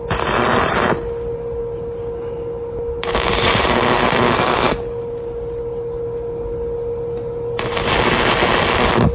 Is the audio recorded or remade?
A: recorded